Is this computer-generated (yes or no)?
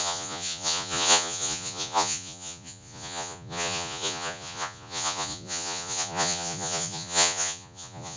yes